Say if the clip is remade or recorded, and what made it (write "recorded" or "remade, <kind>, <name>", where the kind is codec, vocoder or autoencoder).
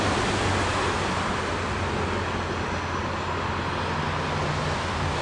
recorded